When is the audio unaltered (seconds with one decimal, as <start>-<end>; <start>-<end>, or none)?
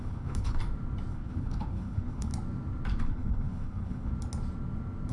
0.6-1.1; 2.3-3.0; 4.1-5.1